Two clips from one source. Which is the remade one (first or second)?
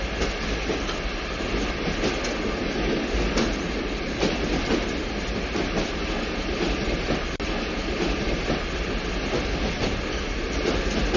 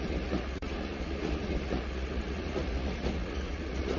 second